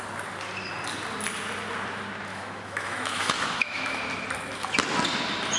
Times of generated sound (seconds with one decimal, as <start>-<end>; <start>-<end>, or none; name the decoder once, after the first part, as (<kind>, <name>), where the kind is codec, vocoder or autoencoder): 2.3-4.0 (autoencoder, DAC-VAE)